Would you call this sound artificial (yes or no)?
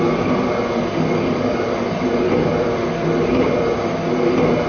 no